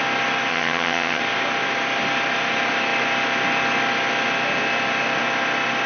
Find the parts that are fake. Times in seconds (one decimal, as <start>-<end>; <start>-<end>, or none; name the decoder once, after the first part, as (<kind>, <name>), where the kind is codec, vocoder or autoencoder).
0.5-1.2 (vocoder, HiFi-GAN)